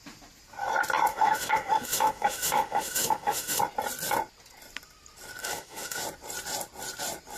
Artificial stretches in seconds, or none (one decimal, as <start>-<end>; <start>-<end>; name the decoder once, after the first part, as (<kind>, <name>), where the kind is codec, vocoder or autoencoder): 1.1-3.6 (autoencoder, DAC-VAE); 5.4-6.0